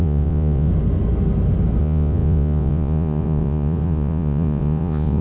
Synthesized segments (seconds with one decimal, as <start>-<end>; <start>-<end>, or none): 0.0-0.7; 1.8-5.2